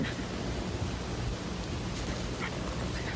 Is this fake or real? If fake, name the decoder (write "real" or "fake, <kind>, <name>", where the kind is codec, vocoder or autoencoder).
real